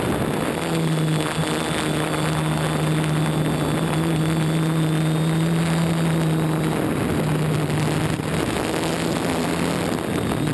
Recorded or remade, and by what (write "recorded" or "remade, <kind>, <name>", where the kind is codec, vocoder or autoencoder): recorded